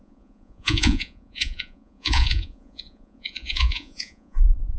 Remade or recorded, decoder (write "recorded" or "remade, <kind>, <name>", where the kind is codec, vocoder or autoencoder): remade, vocoder, Vocos